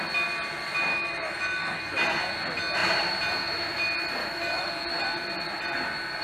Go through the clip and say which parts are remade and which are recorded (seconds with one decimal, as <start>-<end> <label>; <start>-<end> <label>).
0.0-0.9 recorded; 0.9-1.8 remade; 1.8-4.2 recorded; 4.2-4.7 remade; 4.7-6.2 recorded